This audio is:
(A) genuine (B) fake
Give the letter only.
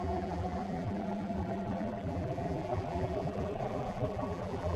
B